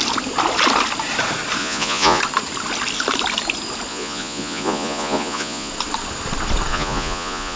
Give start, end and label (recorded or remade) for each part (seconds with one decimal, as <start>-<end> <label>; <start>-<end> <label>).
0.0-1.6 recorded; 1.6-2.2 remade; 2.2-3.9 recorded; 3.9-5.7 remade; 5.7-6.7 recorded; 6.7-7.6 remade